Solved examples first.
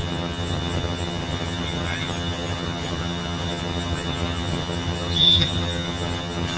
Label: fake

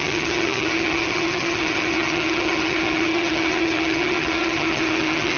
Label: fake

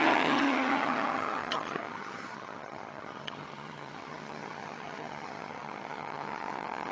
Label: fake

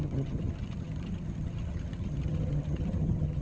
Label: fake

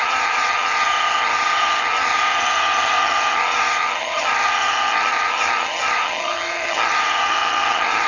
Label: fake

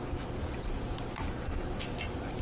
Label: real